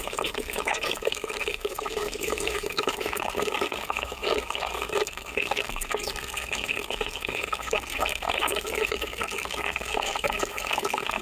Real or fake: fake